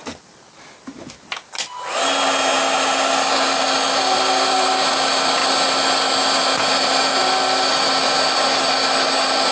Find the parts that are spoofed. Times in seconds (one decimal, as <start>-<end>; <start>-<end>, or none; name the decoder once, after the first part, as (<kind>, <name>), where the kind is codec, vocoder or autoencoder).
none